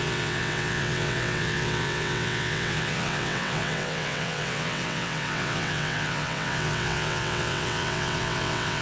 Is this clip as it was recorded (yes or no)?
no